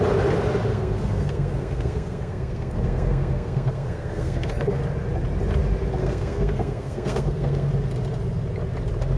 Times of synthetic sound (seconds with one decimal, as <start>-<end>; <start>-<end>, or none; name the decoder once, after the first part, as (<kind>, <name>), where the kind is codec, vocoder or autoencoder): 0.7-4.8 (codec, SNAC); 6.0-7.7